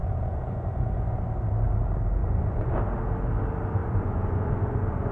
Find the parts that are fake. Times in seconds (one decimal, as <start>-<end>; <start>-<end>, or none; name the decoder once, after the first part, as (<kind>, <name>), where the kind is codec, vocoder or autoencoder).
0.0-1.2 (vocoder, Vocos); 2.2-2.8; 3.8-5.1